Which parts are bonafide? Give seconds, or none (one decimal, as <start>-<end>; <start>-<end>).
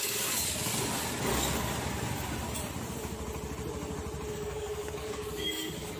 0.7-4.3